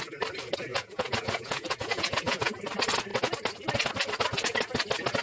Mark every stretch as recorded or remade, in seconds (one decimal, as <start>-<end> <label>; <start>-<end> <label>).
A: 0.0-0.7 recorded; 0.7-2.6 remade; 2.6-5.2 recorded